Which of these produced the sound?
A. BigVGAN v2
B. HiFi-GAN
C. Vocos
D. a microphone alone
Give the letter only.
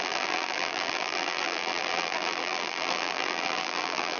A